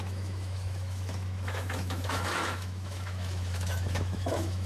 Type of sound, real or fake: fake